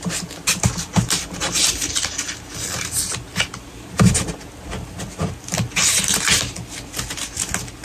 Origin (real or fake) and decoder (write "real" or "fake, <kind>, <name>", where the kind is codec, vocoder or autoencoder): real